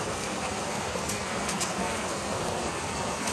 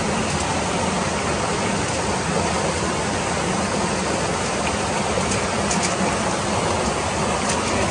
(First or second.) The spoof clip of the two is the first